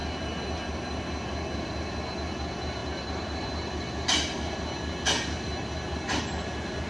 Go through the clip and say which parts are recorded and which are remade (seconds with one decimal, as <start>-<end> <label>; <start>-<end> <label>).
0.0-6.9 recorded